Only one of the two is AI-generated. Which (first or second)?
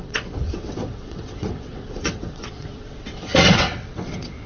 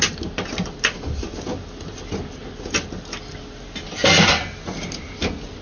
first